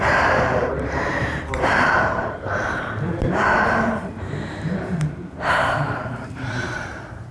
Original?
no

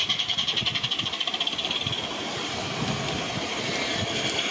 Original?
no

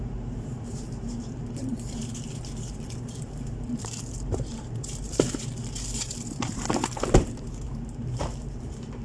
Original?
no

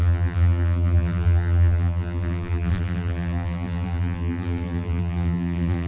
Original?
no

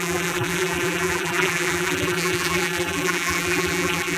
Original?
no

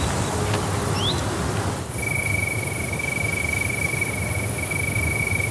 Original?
yes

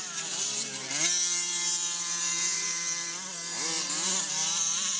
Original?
no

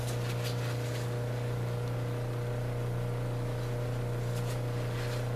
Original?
yes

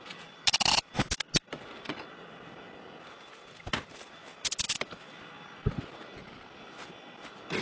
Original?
yes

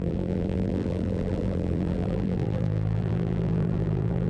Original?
no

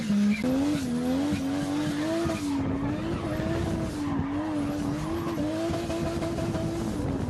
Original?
yes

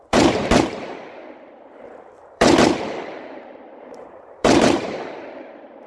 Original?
no